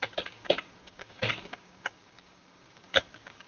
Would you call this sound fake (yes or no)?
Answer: yes